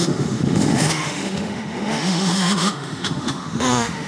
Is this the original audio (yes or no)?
no